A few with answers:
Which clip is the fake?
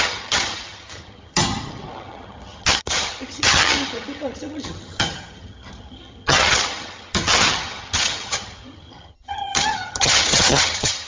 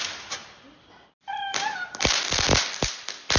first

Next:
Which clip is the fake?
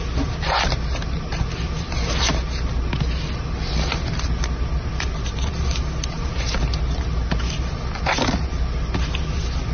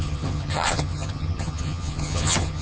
second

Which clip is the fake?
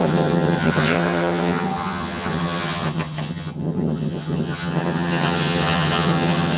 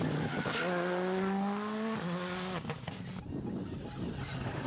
first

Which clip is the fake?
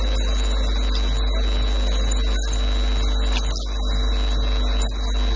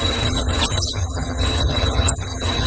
second